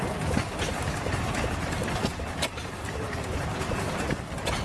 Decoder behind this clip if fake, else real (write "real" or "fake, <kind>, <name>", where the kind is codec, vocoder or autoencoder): real